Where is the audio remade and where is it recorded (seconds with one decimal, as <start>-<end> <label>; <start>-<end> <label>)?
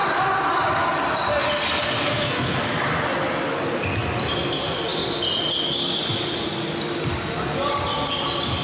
0.0-2.0 recorded; 2.0-2.6 remade; 2.6-8.6 recorded